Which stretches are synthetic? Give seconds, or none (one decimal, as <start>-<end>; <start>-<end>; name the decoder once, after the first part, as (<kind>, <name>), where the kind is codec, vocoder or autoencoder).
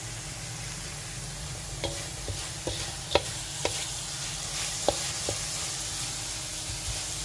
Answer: none